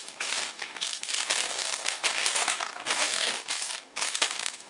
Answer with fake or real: fake